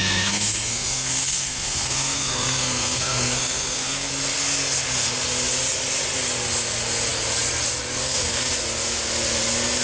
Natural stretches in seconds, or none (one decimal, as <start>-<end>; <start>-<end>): 4.1-8.0; 8.5-9.8